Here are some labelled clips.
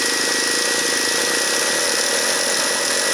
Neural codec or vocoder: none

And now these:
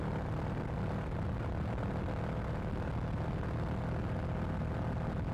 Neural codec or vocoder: none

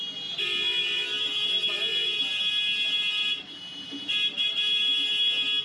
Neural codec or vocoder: none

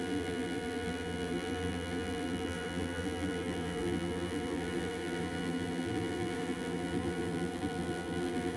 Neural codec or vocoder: vocoder, BigVGAN v2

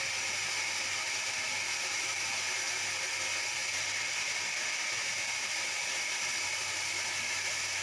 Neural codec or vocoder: none